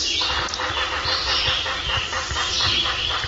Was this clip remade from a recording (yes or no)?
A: yes